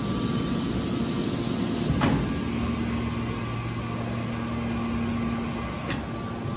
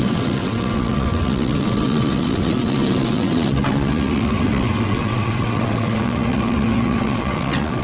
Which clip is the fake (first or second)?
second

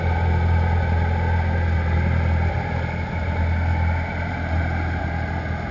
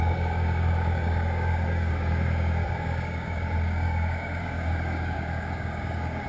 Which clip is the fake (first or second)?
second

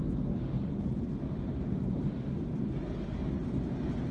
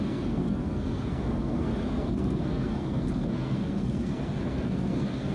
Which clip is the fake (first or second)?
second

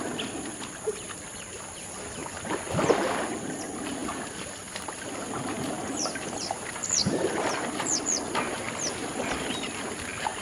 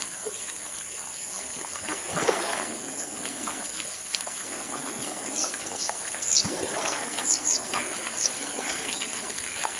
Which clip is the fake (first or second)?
second